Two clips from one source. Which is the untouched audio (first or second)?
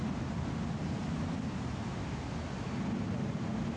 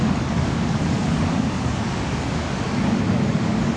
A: first